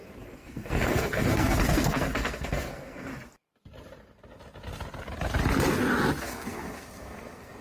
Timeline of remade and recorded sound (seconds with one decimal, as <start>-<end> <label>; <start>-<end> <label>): 0.0-3.1 remade; 3.1-6.2 recorded; 6.2-7.6 remade